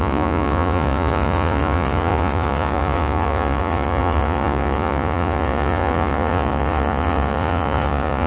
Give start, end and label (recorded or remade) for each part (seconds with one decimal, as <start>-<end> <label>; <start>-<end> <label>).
0.0-8.3 remade